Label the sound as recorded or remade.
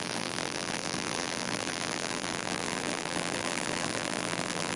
remade